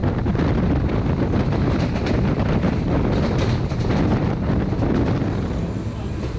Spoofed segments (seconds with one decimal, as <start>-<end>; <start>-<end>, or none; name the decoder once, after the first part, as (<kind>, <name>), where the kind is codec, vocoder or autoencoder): none